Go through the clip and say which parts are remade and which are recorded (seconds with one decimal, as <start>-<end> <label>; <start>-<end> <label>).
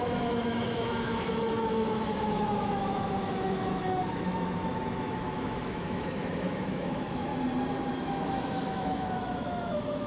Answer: 0.0-7.3 remade; 7.3-7.9 recorded; 7.9-10.1 remade